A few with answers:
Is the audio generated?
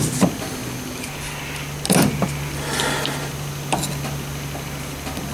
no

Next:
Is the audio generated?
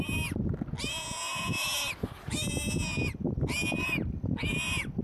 no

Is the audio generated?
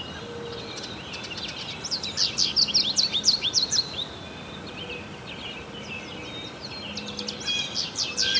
no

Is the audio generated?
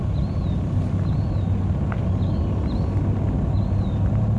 no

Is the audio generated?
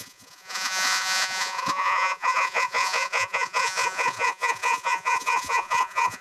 yes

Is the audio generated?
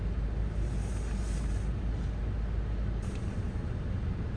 no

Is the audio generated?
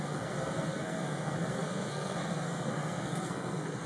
yes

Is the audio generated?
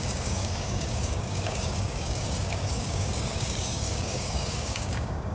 yes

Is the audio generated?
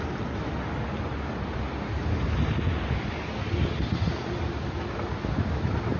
no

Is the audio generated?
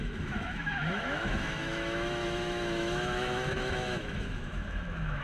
yes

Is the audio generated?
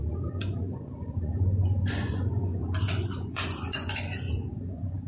yes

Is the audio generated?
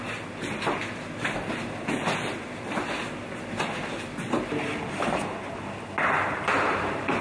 no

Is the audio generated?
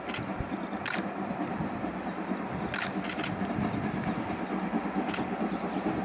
no